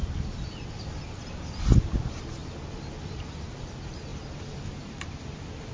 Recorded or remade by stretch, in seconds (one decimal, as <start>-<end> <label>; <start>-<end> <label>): 0.0-5.7 recorded